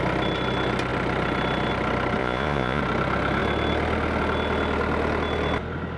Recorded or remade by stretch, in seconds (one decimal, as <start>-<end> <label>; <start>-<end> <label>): 0.0-2.2 recorded; 2.2-2.8 remade; 2.8-6.0 recorded